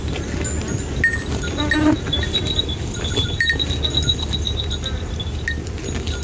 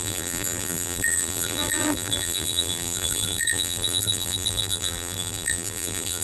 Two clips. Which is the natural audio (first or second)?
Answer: first